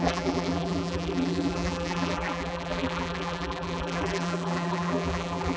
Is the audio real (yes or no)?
no